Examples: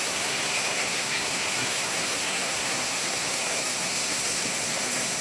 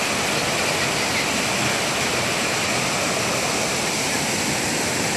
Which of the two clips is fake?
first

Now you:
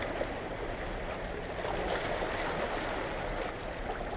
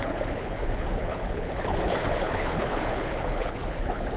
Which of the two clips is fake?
second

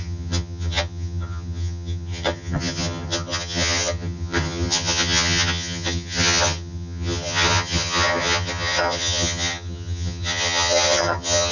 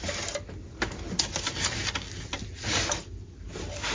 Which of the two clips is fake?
first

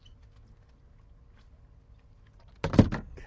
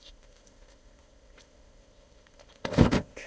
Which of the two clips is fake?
second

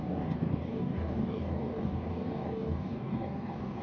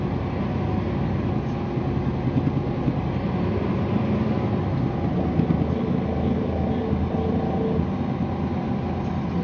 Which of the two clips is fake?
first